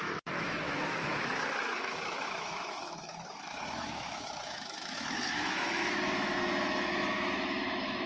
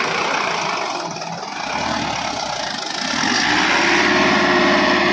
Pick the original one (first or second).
second